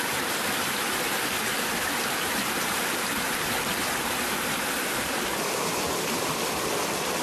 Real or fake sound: fake